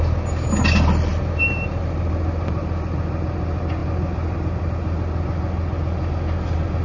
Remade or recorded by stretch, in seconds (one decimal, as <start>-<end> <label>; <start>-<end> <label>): 0.0-6.8 recorded